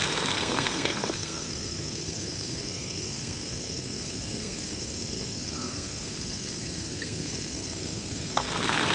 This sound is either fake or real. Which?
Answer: fake